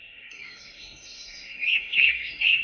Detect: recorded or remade remade